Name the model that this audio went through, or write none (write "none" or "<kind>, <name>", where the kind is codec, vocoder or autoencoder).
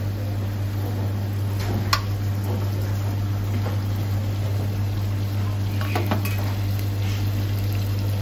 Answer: none